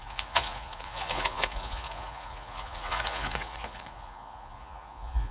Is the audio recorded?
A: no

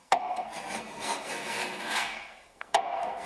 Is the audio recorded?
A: no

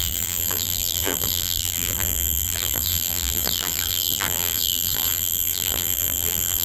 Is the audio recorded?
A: no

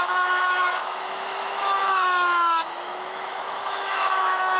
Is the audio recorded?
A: no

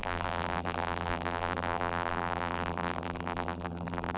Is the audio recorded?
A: no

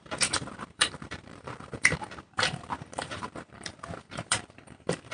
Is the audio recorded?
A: no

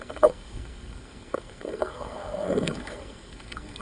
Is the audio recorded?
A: no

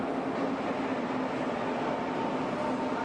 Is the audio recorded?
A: yes